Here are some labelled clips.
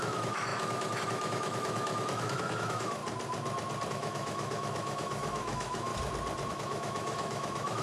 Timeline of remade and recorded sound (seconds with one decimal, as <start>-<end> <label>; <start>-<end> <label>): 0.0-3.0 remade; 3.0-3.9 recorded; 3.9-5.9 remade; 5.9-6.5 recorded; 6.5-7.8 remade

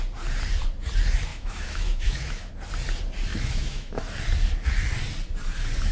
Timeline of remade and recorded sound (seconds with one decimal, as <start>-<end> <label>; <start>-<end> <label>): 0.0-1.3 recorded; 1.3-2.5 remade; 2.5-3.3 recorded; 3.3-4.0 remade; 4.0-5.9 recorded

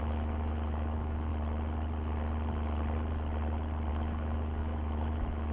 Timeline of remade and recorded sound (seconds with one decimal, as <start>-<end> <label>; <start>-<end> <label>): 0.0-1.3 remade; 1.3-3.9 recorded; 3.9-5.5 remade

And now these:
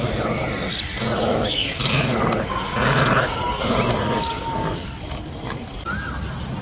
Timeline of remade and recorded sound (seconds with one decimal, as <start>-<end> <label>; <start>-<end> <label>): 0.0-1.3 recorded; 1.3-1.9 remade; 1.9-6.6 recorded

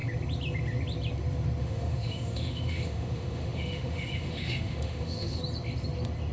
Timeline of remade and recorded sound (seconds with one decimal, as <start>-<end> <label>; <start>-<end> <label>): 0.0-1.6 recorded; 1.6-5.4 remade; 5.4-6.3 recorded